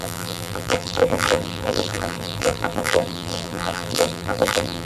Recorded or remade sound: remade